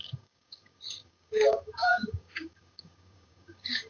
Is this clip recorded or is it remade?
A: remade